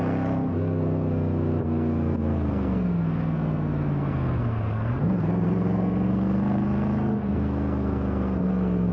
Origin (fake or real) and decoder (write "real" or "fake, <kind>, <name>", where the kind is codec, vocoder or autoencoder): fake, codec, SNAC